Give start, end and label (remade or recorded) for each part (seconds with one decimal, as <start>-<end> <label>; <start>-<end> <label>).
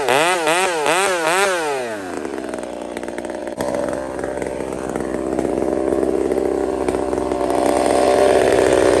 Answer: 0.0-9.0 recorded